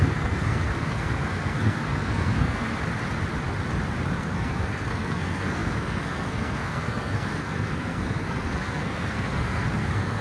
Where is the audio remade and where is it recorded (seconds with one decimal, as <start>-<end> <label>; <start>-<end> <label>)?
0.0-2.7 remade; 2.7-4.2 recorded; 4.2-10.2 remade